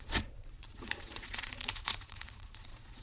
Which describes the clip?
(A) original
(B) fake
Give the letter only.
B